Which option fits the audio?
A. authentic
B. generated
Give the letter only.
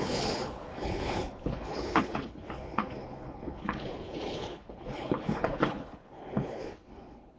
B